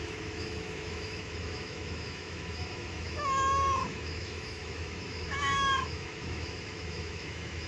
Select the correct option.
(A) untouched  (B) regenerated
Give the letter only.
B